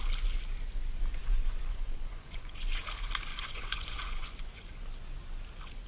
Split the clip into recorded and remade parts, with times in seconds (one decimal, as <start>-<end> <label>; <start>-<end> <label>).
0.0-1.2 recorded; 1.2-2.8 remade; 2.8-3.3 recorded; 3.3-4.7 remade; 4.7-5.9 recorded